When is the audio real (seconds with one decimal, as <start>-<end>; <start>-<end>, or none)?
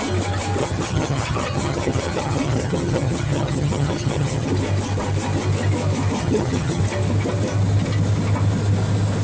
0.0-0.6; 4.5-6.2; 6.8-9.2